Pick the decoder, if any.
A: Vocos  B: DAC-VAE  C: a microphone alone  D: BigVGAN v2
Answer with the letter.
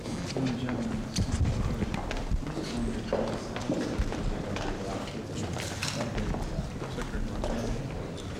C